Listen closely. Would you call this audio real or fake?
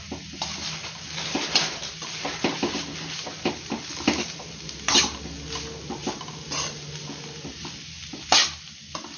real